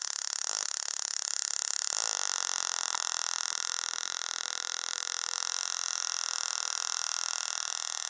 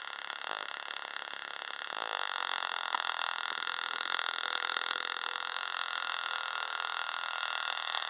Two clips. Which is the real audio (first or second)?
first